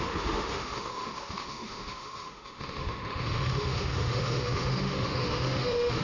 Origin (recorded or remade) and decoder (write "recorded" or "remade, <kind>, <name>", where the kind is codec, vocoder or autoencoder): remade, autoencoder, DAC-VAE